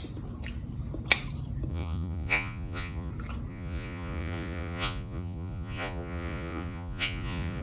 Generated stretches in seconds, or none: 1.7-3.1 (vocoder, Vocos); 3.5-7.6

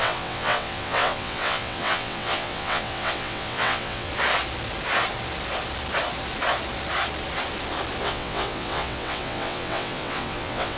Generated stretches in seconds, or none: 0.0-4.1 (vocoder, WaveNeXt); 8.0-10.8

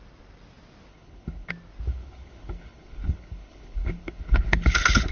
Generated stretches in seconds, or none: 0.9-1.5 (codec, HILCodec); 1.9-5.1

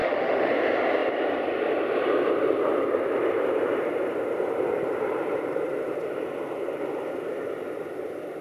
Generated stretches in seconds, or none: 0.0-0.5 (autoencoder, DAC-VAE)

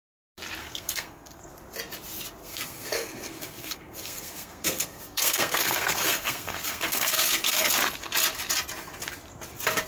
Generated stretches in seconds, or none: 0.6-1.5 (codec, SNAC); 2.4-7.7

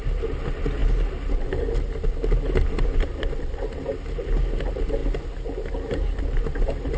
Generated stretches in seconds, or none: none